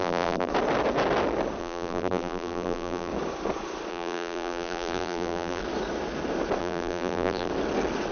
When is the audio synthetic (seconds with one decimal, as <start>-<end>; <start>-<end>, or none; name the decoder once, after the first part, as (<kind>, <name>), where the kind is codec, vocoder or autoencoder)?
0.0-0.5 (vocoder, BigVGAN v2); 1.6-3.1; 3.9-5.6; 6.6-7.5